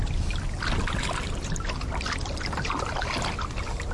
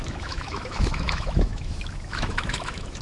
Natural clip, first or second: first